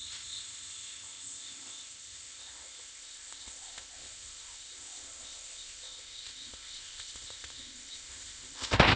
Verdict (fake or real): fake